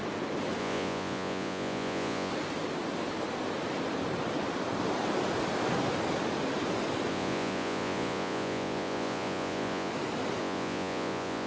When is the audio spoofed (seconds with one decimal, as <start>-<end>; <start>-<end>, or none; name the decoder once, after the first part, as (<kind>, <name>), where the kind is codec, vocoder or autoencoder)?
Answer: 0.6-2.3 (vocoder, Vocos); 7.1-9.9; 10.4-11.5